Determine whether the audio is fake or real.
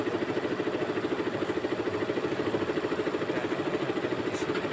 real